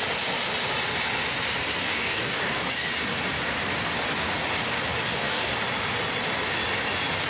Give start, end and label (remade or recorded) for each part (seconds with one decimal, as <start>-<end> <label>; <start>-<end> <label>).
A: 0.0-1.8 recorded; 1.8-2.7 remade; 2.7-4.9 recorded; 4.9-5.5 remade; 5.5-7.3 recorded